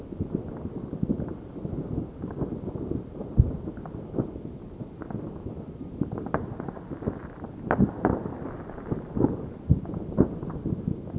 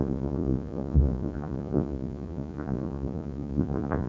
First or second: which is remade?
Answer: second